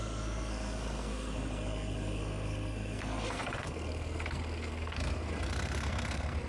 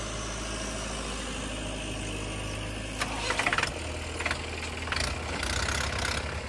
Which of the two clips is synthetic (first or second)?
first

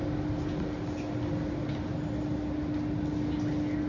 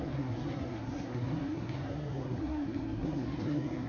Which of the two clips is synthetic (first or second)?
second